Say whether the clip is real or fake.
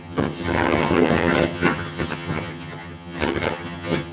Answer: fake